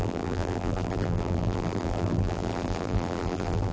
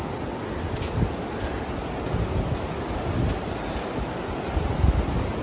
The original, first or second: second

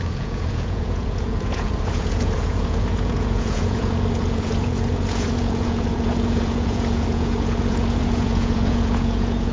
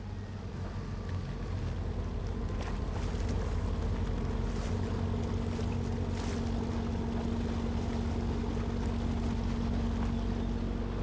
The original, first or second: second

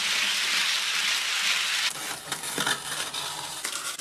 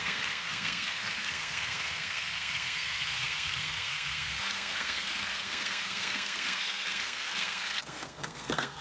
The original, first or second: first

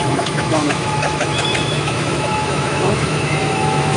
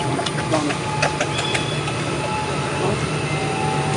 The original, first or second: second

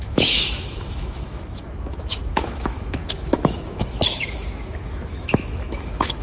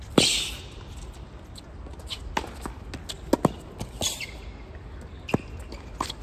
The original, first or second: second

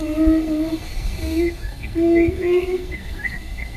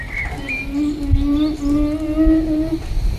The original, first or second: second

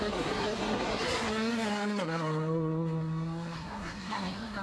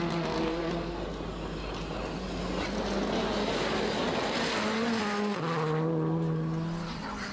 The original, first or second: second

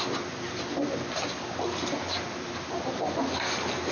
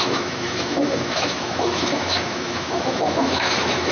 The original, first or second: first